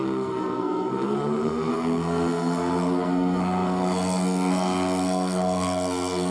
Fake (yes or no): yes